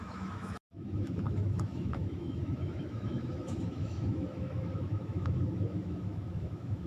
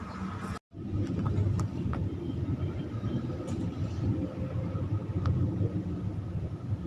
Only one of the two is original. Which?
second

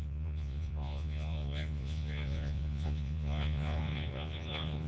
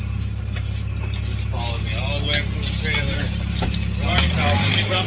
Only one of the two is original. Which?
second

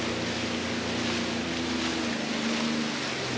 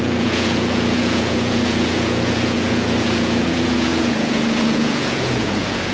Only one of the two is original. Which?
first